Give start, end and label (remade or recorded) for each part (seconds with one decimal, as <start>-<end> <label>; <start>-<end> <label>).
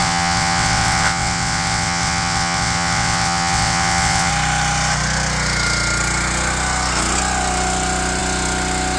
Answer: 0.0-4.3 remade; 4.3-9.0 recorded